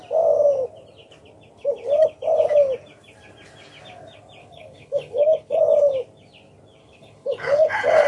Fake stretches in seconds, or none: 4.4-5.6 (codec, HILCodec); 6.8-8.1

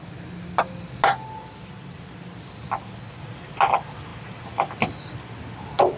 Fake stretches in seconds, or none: none

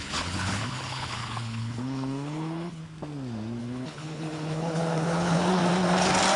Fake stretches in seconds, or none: 0.0-2.8 (codec, HILCodec); 3.6-5.6

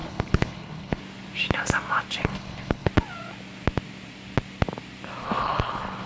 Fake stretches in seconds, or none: 0.0-1.0 (codec, HILCodec); 2.2-2.9; 5.2-6.1

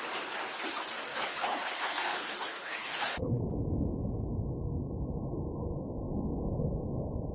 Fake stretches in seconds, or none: 1.1-3.4 (codec, HILCodec)

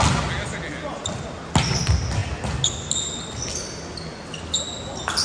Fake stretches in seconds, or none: none

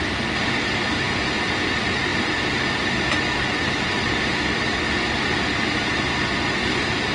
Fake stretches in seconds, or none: none

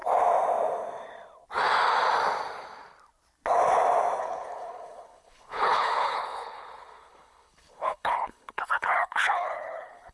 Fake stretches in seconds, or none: 4.2-10.1 (codec, HILCodec)